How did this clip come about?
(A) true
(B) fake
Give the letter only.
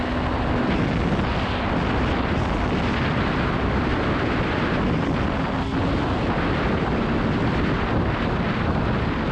A